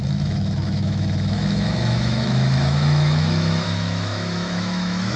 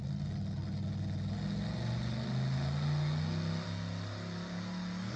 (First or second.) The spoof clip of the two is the first